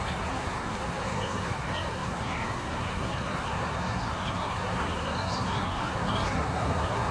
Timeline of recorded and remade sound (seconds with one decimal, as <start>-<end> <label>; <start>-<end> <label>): 0.0-7.1 remade